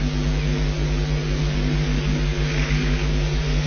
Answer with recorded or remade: recorded